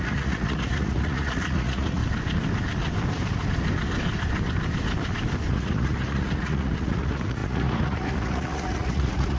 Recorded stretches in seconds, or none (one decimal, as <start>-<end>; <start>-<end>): 2.0-5.5